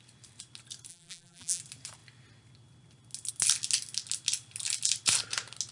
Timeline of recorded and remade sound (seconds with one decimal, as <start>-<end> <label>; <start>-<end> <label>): 0.0-0.9 recorded; 0.9-1.6 remade; 1.6-5.7 recorded